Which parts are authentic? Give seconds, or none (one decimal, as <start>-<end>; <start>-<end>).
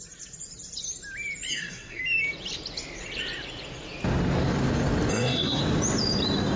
0.0-1.5; 2.0-5.1; 5.6-6.6